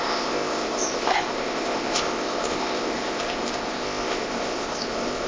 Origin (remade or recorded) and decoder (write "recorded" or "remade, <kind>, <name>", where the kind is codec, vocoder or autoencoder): remade, codec, ZipCodec